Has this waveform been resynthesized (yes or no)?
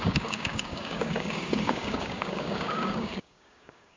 yes